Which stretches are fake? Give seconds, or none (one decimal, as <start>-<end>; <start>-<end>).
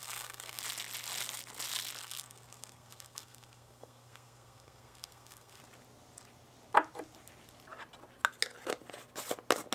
0.0-0.6; 2.0-5.6